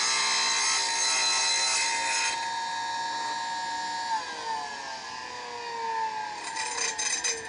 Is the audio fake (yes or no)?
no